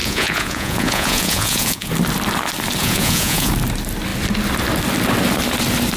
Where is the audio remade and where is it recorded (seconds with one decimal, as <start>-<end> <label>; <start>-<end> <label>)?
0.0-1.9 remade; 1.9-2.8 recorded; 2.8-3.5 remade; 3.5-6.0 recorded